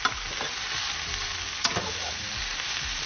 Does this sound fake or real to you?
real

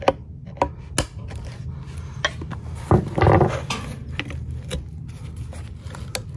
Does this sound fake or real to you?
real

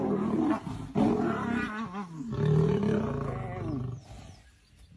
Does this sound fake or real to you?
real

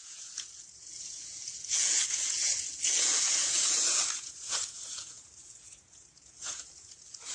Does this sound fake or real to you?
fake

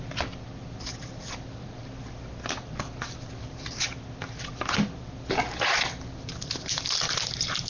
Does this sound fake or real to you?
real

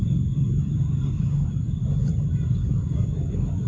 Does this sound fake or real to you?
real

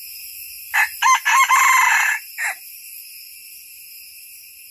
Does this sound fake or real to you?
real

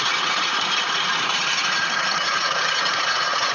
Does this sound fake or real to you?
fake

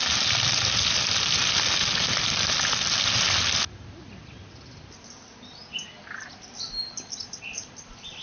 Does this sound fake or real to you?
real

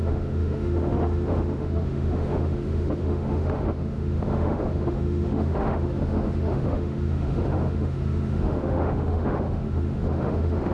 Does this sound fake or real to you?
fake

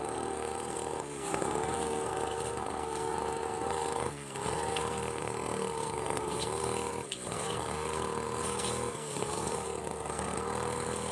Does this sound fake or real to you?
fake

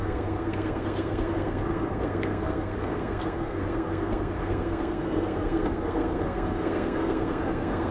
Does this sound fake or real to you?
fake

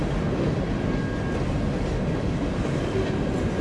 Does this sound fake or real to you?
real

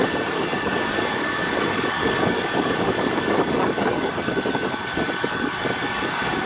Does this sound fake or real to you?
fake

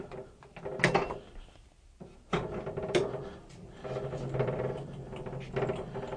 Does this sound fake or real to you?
real